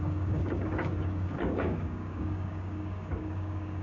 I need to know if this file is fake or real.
fake